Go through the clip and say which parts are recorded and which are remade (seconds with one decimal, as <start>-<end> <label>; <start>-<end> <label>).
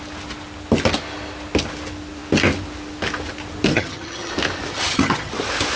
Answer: 0.0-3.7 recorded; 3.7-4.3 remade; 4.3-4.7 recorded; 4.7-5.3 remade; 5.3-5.8 recorded